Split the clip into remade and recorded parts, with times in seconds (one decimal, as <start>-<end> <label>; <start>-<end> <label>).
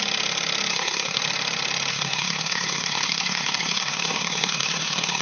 0.0-0.7 recorded; 0.7-1.2 remade; 1.2-1.9 recorded; 1.9-5.2 remade